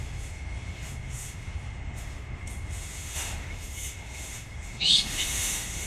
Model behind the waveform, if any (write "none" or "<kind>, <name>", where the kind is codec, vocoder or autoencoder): autoencoder, DAC-VAE